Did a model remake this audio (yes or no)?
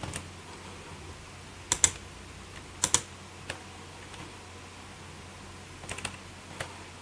no